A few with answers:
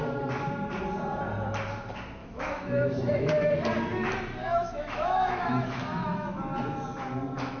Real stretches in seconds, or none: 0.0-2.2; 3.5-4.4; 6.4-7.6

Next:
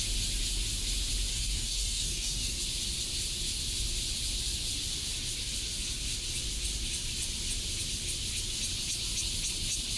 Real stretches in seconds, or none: 0.0-1.3; 2.6-10.0

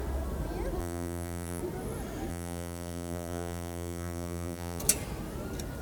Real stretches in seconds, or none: 0.0-0.8; 1.6-2.3; 4.8-5.8